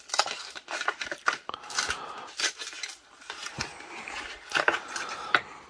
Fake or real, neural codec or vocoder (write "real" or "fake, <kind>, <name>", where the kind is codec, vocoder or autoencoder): real